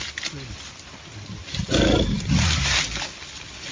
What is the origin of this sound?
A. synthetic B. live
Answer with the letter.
B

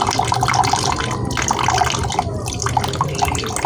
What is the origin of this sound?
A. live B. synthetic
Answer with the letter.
A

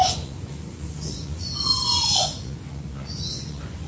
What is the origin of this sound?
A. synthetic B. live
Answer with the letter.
A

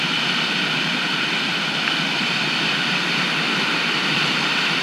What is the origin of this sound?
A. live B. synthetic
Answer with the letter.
B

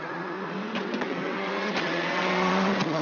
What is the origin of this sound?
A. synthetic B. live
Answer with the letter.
A